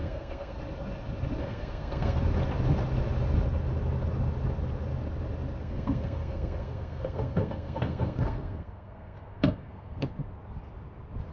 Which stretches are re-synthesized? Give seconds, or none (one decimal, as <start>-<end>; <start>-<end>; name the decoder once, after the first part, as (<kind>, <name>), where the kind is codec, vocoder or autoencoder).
0.0-0.6 (codec, SNAC); 1.4-2.2; 5.6-10.1